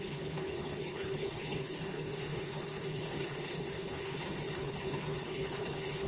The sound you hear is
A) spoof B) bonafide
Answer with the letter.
A